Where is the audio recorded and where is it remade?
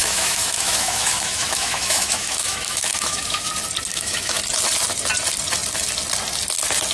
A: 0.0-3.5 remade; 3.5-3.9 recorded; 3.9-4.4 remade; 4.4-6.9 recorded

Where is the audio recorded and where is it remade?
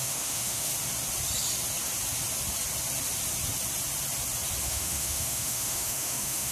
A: 0.0-0.7 remade; 0.7-4.6 recorded; 4.6-6.5 remade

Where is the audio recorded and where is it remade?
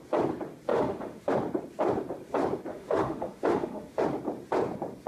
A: 0.0-0.7 recorded; 0.7-1.3 remade; 1.3-2.7 recorded; 2.7-4.0 remade; 4.0-5.1 recorded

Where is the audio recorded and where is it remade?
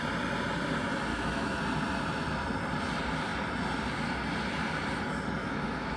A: 0.0-1.1 recorded; 1.1-1.6 remade; 1.6-5.4 recorded; 5.4-6.0 remade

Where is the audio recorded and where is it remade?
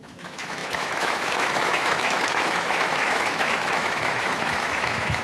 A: 0.0-5.2 remade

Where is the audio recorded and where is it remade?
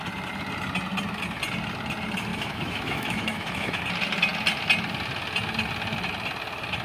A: 0.0-2.3 recorded; 2.3-3.8 remade; 3.8-6.8 recorded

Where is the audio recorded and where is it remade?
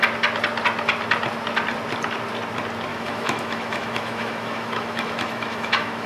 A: 0.0-2.9 recorded; 2.9-6.1 remade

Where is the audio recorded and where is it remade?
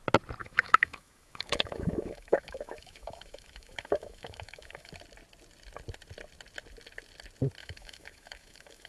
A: 0.0-0.4 recorded; 0.4-4.9 remade; 4.9-7.6 recorded; 7.6-8.9 remade